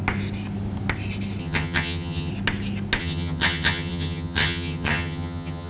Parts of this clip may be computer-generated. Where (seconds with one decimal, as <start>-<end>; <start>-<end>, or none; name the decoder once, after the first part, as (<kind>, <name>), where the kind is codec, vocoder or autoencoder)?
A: 1.4-2.3 (vocoder, HiFi-GAN); 3.0-5.7